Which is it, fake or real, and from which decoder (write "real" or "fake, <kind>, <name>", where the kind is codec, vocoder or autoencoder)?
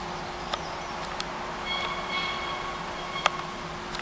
real